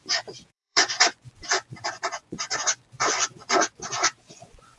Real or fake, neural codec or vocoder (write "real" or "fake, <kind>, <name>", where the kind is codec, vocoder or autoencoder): fake, vocoder, Vocos